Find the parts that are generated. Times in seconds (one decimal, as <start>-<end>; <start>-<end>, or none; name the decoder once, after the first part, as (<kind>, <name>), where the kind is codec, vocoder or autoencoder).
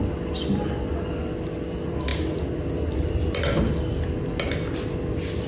none